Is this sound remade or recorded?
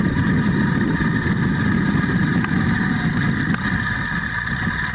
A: recorded